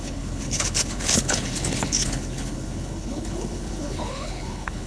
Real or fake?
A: fake